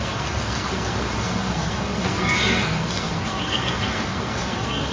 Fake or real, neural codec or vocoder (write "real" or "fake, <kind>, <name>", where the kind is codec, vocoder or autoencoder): fake, codec, SNAC